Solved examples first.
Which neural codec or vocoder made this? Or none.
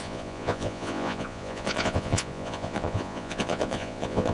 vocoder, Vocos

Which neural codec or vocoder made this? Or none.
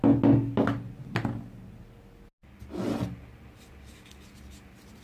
none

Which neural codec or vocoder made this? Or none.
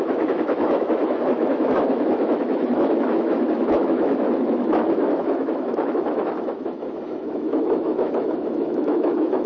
autoencoder, DAC-VAE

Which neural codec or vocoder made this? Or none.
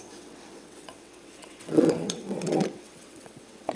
vocoder, WaveNeXt